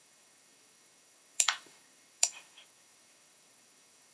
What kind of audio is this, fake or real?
fake